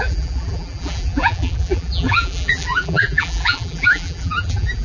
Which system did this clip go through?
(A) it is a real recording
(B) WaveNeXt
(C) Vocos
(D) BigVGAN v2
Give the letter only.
D